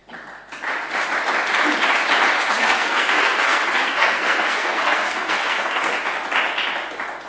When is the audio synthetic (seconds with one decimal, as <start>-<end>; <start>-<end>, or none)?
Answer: 2.6-5.9